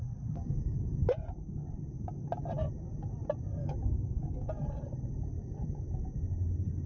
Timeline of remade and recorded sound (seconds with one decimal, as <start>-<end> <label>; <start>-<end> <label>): 0.0-0.4 recorded; 0.4-1.0 remade; 1.0-3.6 recorded; 3.6-4.5 remade; 4.5-6.9 recorded